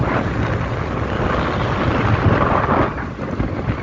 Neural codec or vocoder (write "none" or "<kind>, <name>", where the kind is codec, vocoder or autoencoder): none